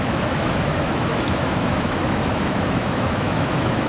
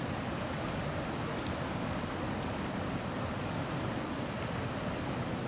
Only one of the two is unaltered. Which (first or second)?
second